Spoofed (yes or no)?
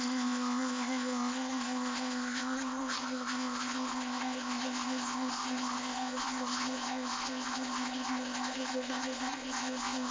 yes